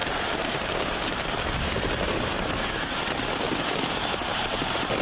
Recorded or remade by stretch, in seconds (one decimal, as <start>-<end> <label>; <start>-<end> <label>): 0.0-2.7 remade; 2.7-4.3 recorded; 4.3-5.0 remade